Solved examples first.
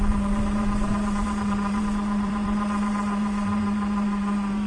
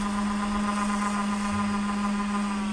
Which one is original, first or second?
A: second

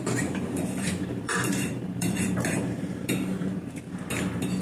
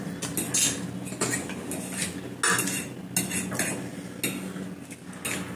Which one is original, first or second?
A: second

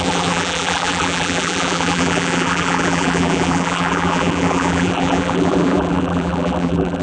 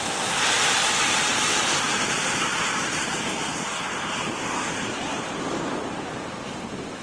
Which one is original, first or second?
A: second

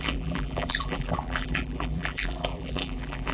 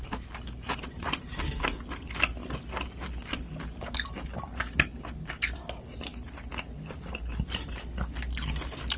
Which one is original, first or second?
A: second